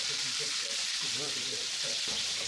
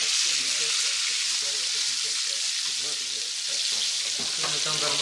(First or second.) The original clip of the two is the second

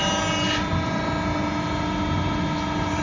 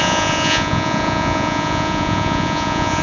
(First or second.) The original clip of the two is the first